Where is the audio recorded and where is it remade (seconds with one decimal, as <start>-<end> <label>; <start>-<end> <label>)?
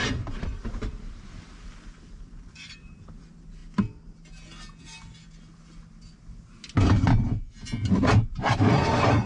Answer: 0.0-3.2 remade; 3.2-9.3 recorded